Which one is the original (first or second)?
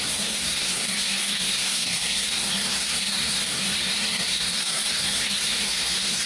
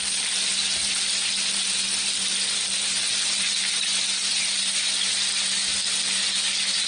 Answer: second